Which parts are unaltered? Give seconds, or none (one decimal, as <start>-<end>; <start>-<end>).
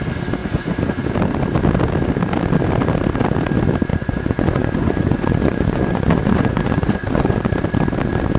0.0-0.4; 1.1-3.9; 7.5-8.4